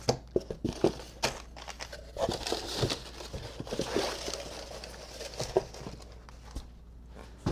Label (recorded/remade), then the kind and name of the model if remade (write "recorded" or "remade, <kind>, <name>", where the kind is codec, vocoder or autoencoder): recorded